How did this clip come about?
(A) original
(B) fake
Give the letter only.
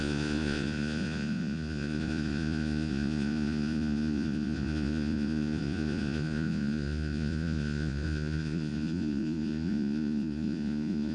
B